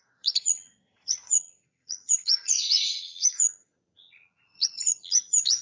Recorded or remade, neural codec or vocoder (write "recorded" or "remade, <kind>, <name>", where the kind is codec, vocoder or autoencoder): remade, vocoder, Vocos